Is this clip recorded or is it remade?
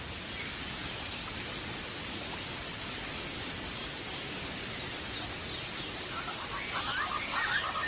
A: recorded